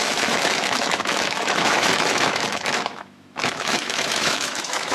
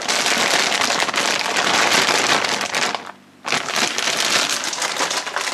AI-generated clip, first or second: first